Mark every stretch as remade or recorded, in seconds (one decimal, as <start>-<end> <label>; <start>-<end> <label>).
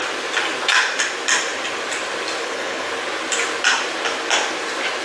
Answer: 0.0-2.4 recorded; 2.4-2.9 remade; 2.9-5.0 recorded